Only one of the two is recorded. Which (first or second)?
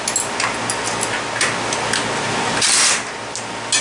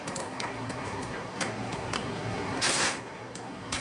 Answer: first